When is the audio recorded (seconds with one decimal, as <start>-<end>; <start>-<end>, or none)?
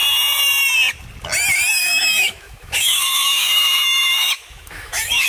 0.0-1.8